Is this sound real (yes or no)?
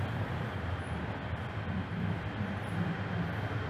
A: yes